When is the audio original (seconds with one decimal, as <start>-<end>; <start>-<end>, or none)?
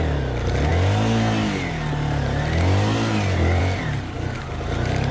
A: 0.0-5.1